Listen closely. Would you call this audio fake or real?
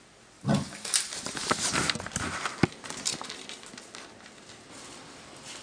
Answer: real